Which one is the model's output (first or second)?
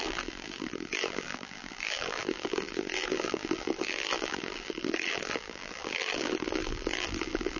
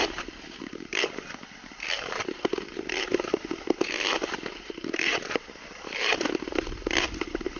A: first